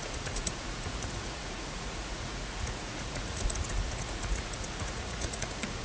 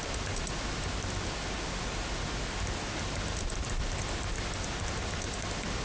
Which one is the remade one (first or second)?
first